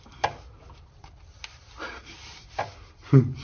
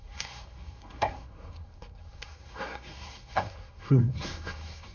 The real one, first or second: first